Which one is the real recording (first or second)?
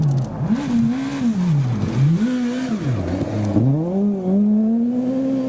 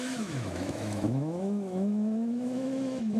first